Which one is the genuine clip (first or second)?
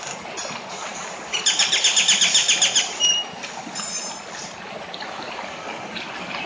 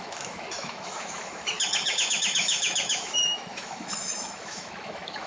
first